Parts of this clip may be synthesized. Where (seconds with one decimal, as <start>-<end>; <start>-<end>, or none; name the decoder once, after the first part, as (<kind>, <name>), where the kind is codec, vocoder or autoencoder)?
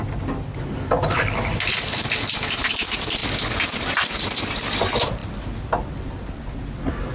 none